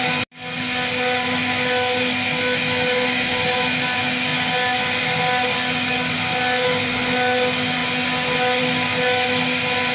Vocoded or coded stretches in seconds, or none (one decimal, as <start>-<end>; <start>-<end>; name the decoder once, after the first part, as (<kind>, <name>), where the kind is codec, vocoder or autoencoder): none